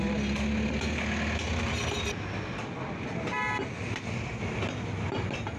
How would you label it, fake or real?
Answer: real